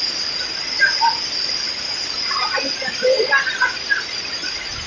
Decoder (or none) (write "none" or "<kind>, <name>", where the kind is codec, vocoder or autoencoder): none